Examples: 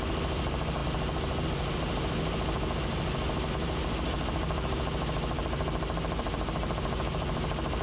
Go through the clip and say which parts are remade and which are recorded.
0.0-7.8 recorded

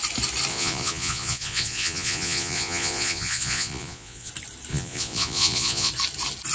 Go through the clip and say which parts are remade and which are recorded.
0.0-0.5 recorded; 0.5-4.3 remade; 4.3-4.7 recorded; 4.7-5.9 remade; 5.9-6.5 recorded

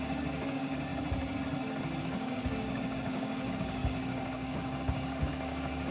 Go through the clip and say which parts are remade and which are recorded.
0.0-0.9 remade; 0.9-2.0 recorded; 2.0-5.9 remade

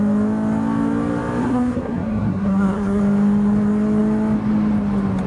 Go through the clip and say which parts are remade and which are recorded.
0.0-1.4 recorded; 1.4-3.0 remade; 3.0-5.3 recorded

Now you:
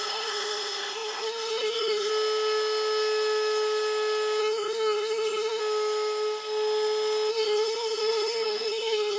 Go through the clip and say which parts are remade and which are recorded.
0.0-2.1 remade; 2.1-4.4 recorded; 4.4-5.6 remade; 5.6-7.3 recorded; 7.3-9.2 remade

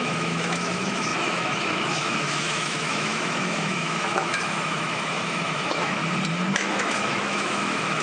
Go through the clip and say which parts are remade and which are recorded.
0.0-6.0 remade; 6.0-6.5 recorded; 6.5-8.0 remade

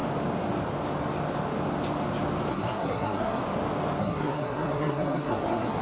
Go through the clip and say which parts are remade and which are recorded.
0.0-2.5 recorded; 2.5-3.4 remade; 3.4-4.0 recorded; 4.0-5.8 remade